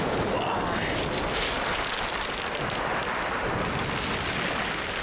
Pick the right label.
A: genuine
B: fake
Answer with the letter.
A